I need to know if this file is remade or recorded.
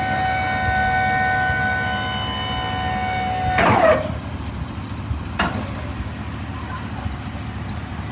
recorded